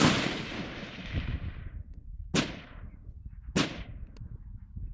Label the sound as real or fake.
real